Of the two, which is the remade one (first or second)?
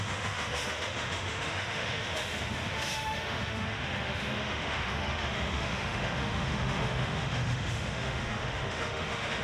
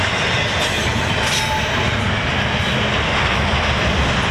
first